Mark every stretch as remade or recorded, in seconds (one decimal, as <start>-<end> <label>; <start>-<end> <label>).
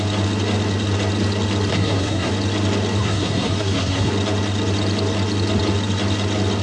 0.0-1.7 recorded; 1.7-2.3 remade; 2.3-3.0 recorded; 3.0-4.1 remade; 4.1-6.6 recorded